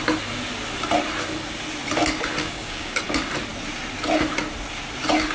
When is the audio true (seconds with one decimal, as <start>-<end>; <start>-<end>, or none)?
0.0-2.4; 3.0-5.3